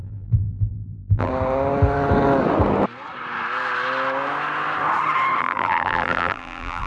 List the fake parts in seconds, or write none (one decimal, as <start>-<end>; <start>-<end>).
0.0-1.3; 5.4-6.9